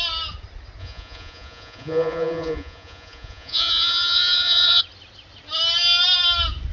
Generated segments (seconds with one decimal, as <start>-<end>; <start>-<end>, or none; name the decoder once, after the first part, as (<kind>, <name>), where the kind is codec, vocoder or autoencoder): 0.8-4.8 (vocoder, Vocos)